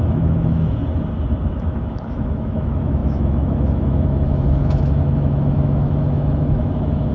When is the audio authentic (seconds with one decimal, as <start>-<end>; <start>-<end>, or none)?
0.8-1.5